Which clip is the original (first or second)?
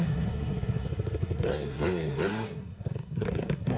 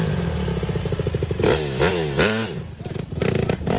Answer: second